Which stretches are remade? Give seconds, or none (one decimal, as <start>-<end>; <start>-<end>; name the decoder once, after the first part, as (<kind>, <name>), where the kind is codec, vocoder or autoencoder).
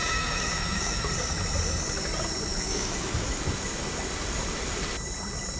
0.0-1.1 (autoencoder, DAC-VAE); 2.5-3.4